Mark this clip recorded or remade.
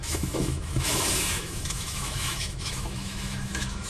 remade